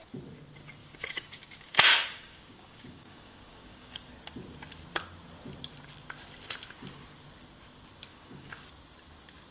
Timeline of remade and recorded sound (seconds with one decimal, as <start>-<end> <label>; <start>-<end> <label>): 0.0-0.8 recorded; 0.8-4.1 remade; 4.1-8.1 recorded; 8.1-8.7 remade; 8.7-9.5 recorded

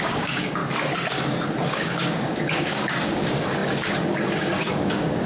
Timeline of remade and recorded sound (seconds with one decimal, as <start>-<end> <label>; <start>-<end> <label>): 0.0-0.6 remade; 0.6-1.7 recorded; 1.7-5.3 remade

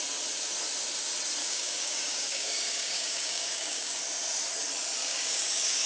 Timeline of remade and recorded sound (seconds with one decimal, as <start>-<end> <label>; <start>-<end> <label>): 0.0-1.4 recorded; 1.4-4.0 remade; 4.0-5.0 recorded; 5.0-5.9 remade

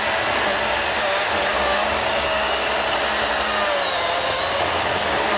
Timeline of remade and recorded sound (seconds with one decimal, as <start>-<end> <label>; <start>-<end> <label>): 0.0-1.5 recorded; 1.5-2.6 remade; 2.6-5.4 recorded

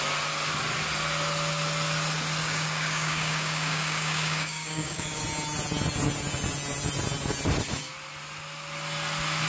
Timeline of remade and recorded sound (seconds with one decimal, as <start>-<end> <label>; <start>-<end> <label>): 0.0-2.4 recorded; 2.4-5.2 remade; 5.2-9.5 recorded

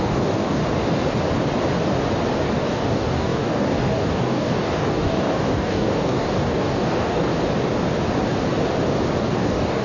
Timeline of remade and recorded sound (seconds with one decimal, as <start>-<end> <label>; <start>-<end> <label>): 0.0-0.6 remade; 0.6-2.6 recorded; 2.6-7.3 remade; 7.3-9.2 recorded; 9.2-9.8 remade

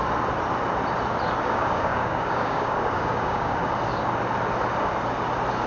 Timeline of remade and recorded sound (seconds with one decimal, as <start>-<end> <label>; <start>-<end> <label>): 0.0-1.4 recorded; 1.4-3.7 remade; 3.7-5.7 recorded